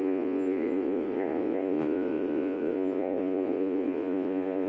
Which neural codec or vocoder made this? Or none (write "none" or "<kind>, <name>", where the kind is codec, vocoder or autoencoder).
vocoder, Vocos